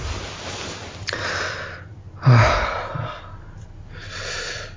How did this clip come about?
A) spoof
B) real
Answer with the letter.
B